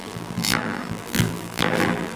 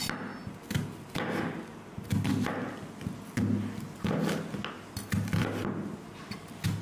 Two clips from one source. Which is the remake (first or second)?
first